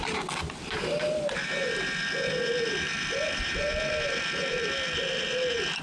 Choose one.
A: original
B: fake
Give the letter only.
B